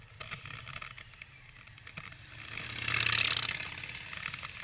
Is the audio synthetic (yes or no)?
no